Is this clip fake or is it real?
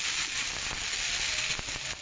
real